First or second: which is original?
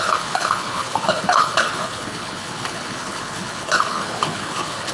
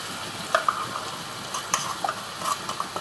second